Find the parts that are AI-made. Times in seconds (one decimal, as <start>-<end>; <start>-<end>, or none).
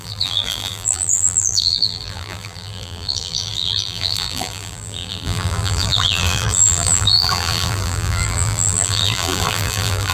0.0-10.1